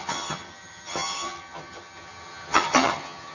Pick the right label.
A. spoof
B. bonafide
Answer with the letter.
A